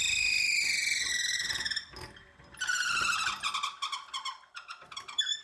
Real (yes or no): no